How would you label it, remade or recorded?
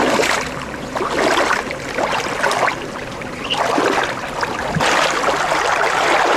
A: recorded